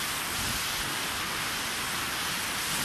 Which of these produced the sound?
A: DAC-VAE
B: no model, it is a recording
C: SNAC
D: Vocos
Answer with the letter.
B